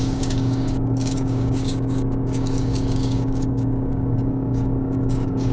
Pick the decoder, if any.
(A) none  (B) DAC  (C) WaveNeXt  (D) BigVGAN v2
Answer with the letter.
B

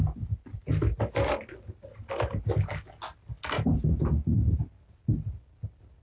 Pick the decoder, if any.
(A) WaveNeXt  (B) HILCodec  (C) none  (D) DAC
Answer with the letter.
C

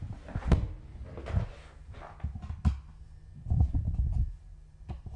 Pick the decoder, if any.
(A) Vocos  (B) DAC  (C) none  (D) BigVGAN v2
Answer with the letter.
C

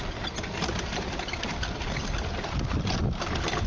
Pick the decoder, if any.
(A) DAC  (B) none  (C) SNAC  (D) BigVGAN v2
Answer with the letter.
B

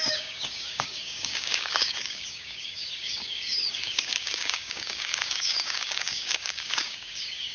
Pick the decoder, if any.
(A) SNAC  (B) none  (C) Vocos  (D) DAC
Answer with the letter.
D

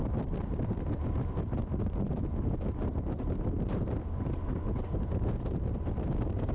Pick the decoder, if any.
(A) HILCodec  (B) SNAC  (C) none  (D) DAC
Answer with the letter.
C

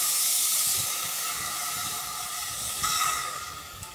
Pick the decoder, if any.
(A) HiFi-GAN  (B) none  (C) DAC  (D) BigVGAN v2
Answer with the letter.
C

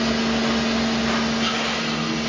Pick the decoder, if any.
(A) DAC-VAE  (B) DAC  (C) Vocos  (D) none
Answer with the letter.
D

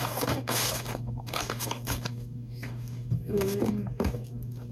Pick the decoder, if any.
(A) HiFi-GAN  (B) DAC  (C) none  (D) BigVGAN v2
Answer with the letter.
B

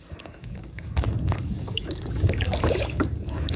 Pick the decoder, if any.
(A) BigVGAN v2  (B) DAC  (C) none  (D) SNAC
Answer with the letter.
B